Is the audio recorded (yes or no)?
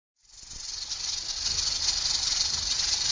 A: yes